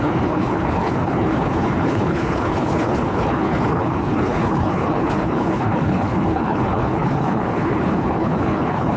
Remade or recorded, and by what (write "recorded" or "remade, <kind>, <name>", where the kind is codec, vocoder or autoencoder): remade, codec, HILCodec